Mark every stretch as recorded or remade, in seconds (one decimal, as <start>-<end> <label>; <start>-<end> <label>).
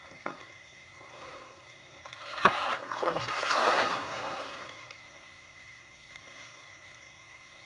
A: 0.0-7.7 remade